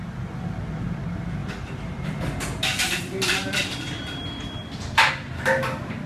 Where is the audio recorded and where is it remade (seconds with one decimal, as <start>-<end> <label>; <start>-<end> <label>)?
0.0-1.4 recorded; 1.4-5.1 remade; 5.1-6.1 recorded